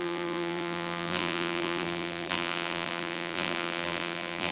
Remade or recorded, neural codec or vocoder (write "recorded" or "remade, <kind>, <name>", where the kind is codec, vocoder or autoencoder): remade, vocoder, BigVGAN v2